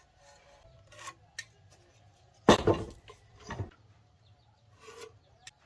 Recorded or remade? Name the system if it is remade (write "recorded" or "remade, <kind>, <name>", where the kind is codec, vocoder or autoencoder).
recorded